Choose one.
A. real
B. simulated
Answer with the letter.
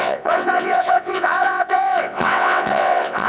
B